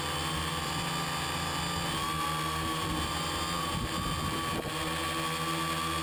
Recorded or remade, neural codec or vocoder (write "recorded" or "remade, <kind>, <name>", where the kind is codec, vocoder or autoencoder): recorded